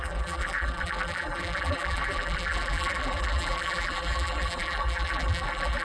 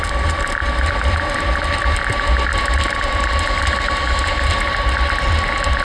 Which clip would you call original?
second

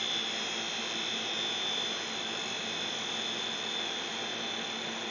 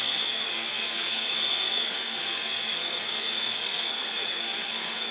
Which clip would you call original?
first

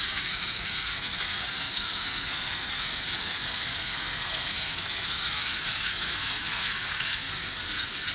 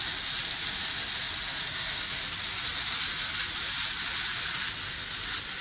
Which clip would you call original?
second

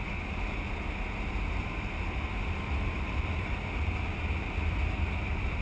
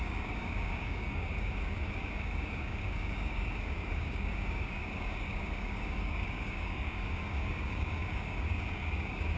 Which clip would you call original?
first